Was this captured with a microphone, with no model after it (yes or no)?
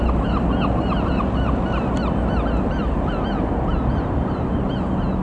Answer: yes